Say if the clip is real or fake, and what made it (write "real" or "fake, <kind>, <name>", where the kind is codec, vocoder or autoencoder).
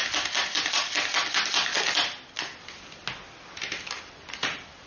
real